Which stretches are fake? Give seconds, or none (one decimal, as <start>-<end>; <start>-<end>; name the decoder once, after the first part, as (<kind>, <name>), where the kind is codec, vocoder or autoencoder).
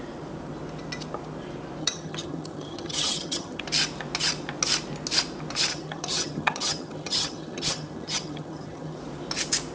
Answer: 1.8-3.6 (vocoder, HiFi-GAN); 5.7-9.0